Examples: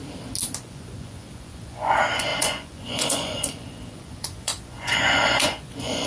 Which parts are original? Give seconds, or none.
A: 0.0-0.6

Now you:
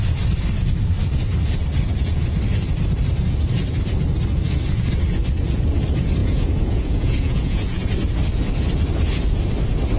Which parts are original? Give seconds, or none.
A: 0.0-6.2; 7.9-10.0

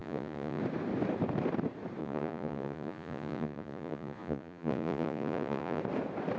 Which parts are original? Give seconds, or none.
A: 0.6-2.0; 5.8-6.4

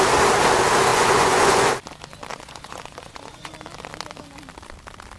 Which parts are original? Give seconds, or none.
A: 0.0-0.9; 1.7-2.3; 3.5-5.2

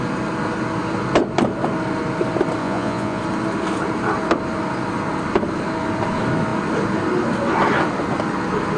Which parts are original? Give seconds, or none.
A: 0.0-2.6; 3.2-8.8

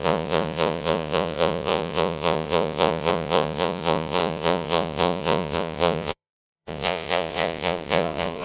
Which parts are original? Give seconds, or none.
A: none

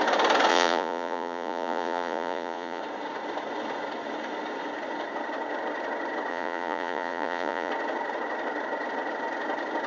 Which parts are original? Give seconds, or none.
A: 0.0-0.5; 2.8-6.3; 7.7-9.9